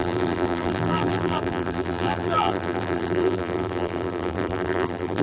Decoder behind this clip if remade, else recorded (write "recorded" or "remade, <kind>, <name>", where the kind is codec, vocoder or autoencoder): remade, vocoder, BigVGAN v2